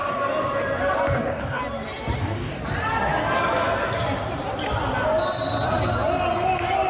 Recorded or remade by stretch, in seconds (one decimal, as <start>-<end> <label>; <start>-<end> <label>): 0.0-1.2 recorded; 1.2-1.6 remade; 1.6-2.2 recorded; 2.2-2.6 remade; 2.6-6.9 recorded